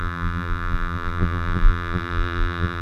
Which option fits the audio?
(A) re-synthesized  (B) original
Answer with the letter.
A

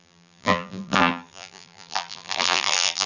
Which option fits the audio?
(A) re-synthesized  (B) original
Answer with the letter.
A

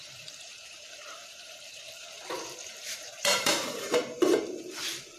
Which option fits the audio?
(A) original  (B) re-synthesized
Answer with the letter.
B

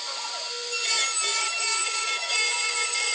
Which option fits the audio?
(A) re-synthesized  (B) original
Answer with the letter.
B